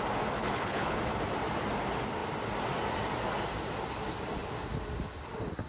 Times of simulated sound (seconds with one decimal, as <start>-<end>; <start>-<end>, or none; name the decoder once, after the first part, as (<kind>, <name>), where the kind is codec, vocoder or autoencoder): 0.4-1.0 (codec, HILCodec)